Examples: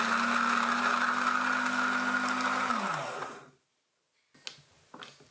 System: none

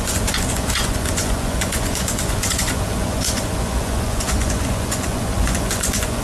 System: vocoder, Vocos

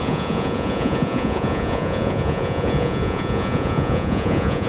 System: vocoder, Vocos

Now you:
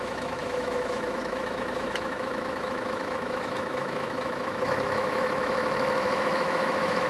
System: autoencoder, DAC-VAE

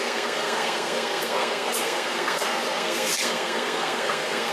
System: codec, SNAC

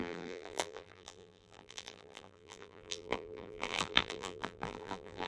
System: vocoder, BigVGAN v2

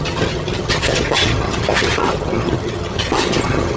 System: vocoder, HiFi-GAN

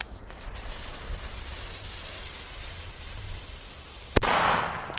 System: none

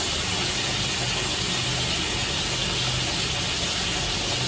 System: none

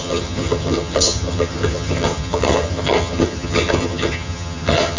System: vocoder, HiFi-GAN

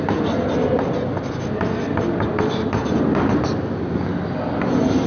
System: none